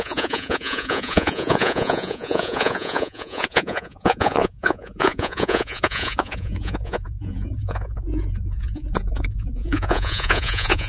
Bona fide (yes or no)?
no